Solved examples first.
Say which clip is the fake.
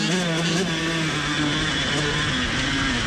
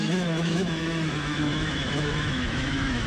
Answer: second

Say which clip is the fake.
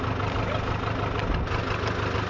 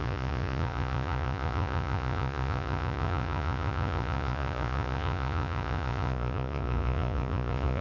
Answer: second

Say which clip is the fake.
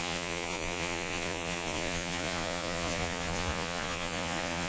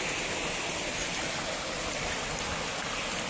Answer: first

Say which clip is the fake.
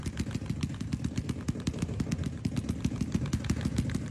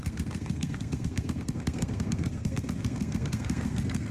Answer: second